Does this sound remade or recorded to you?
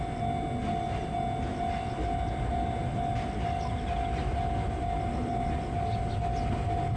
recorded